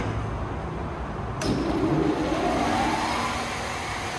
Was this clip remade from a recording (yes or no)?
no